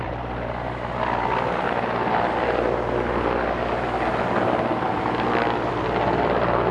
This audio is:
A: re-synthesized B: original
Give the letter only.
B